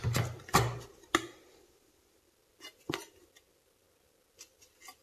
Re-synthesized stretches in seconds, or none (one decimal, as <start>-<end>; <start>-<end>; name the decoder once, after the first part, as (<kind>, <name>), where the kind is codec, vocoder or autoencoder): none